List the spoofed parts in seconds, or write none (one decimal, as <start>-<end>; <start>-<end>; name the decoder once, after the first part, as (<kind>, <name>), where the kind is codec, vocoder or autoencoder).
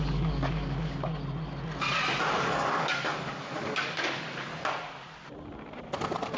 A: 0.0-1.1 (codec, DAC); 2.4-4.5